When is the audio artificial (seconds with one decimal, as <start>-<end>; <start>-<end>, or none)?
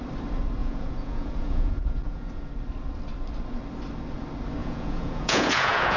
0.6-2.5; 4.6-6.0